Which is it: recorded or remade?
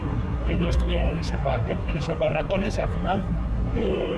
remade